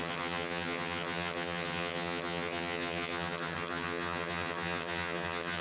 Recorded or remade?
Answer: remade